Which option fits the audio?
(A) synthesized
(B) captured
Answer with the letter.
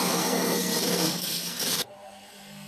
A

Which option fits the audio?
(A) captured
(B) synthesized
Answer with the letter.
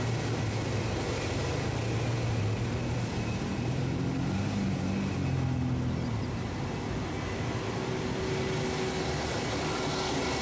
A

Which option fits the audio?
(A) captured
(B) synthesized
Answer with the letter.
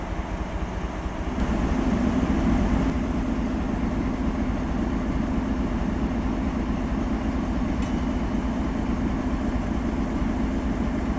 A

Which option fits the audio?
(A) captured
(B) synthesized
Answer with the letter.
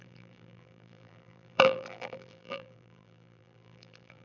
B